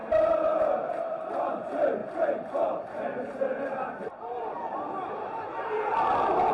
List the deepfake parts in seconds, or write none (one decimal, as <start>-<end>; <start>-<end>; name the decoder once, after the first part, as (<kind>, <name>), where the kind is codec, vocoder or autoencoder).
0.9-6.5 (vocoder, BigVGAN v2)